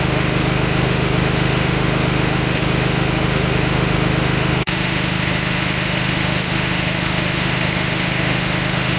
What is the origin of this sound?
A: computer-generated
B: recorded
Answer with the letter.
A